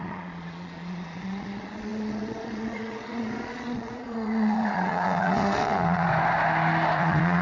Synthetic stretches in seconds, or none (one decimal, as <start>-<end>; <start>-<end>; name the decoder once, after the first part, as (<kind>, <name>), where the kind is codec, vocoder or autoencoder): 0.0-6.1 (vocoder, Vocos); 7.0-7.4